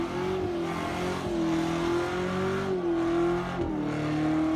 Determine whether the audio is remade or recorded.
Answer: recorded